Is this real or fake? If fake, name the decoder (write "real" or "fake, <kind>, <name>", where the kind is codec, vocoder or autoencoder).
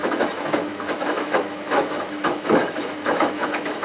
fake, autoencoder, DAC-VAE